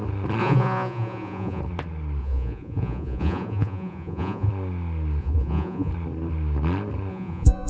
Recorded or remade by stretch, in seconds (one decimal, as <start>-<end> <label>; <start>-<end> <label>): 0.0-0.4 recorded; 0.4-1.6 remade; 1.6-2.2 recorded; 2.2-4.5 remade; 4.5-5.2 recorded; 5.2-5.9 remade; 5.9-7.1 recorded; 7.1-7.7 remade